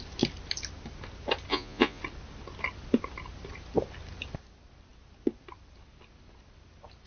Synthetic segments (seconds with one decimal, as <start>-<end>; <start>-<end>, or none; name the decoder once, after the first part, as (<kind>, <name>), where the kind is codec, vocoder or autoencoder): 1.5-2.0 (vocoder, Vocos)